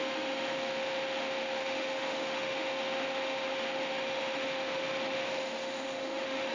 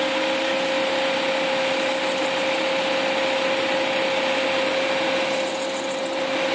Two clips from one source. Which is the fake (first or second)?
first